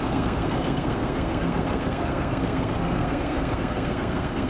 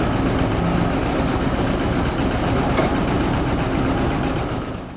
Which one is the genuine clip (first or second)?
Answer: second